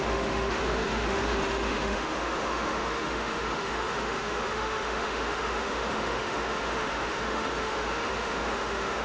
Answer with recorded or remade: remade